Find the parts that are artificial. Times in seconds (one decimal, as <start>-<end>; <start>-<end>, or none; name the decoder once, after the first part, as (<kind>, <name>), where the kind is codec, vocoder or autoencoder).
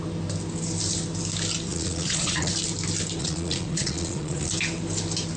1.7-2.5 (vocoder, Vocos); 3.2-4.5